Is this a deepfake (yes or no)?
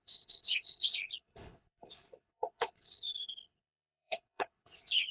yes